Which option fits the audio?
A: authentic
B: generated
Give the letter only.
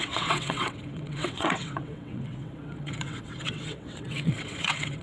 B